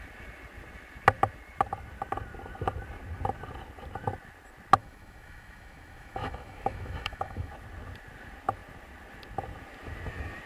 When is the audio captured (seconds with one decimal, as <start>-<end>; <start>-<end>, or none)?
0.0-4.8; 7.5-10.5